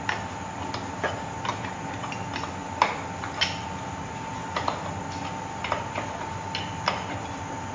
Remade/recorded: recorded